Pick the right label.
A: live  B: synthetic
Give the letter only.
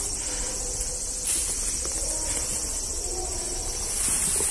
A